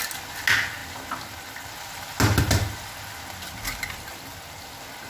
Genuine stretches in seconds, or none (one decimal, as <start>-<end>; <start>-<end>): 0.0-5.1